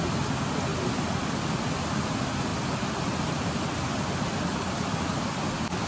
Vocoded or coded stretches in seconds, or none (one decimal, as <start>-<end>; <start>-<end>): 2.5-4.0; 4.5-5.1